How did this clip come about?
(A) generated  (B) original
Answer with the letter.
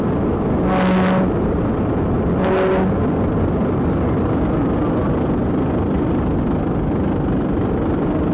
B